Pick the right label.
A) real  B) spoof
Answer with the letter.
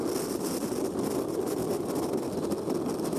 A